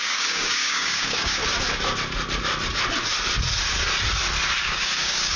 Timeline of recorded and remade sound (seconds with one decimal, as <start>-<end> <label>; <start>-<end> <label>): 0.0-1.4 remade; 1.4-4.6 recorded; 4.6-5.4 remade